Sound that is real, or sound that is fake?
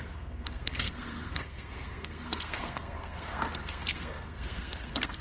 fake